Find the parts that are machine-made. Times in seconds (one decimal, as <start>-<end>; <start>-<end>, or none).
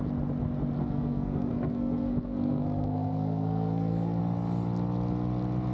0.8-4.2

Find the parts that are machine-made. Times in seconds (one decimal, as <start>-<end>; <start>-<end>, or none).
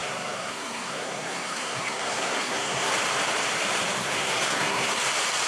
0.0-2.9; 4.0-5.0